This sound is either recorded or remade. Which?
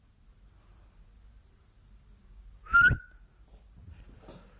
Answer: recorded